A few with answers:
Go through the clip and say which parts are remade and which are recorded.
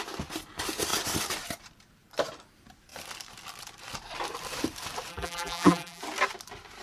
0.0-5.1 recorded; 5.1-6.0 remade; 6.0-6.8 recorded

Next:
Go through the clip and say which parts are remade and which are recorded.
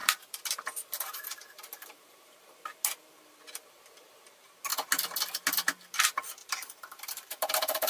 0.0-2.4 remade; 2.4-6.4 recorded; 6.4-7.9 remade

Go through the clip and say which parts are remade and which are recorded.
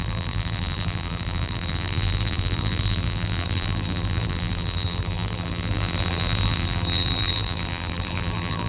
0.0-8.7 remade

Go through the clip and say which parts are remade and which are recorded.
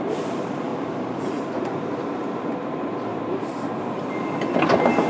0.0-0.7 recorded; 0.7-3.8 remade; 3.8-5.1 recorded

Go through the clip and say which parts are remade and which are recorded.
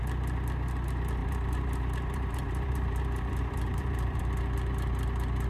0.0-1.2 recorded; 1.2-4.2 remade; 4.2-5.5 recorded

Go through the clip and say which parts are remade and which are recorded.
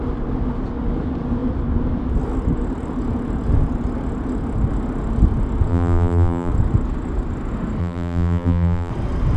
0.0-5.7 recorded; 5.7-6.5 remade; 6.5-7.8 recorded; 7.8-8.9 remade; 8.9-9.4 recorded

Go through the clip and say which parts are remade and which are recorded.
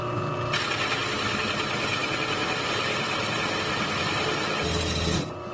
0.0-5.5 recorded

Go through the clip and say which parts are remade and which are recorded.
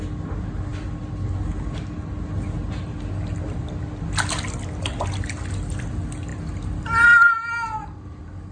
0.0-8.5 recorded